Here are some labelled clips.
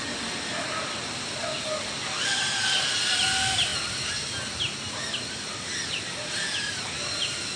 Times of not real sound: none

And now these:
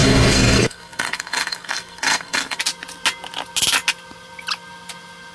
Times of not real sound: 0.0-2.6 (codec, SNAC)

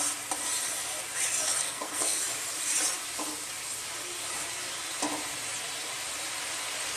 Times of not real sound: 1.6-2.2 (codec, SNAC)

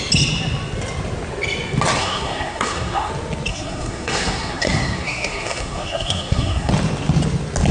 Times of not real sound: 2.0-3.1 (codec, SNAC); 3.5-6.7